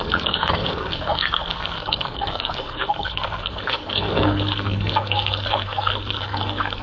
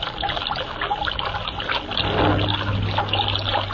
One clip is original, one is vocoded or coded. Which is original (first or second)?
second